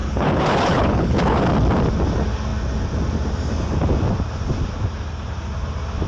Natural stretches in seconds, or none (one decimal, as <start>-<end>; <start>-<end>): 1.4-6.1